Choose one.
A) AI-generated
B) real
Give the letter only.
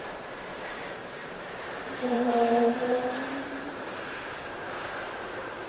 A